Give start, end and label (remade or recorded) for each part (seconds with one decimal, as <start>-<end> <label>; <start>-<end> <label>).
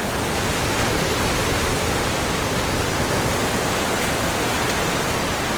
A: 0.0-5.6 recorded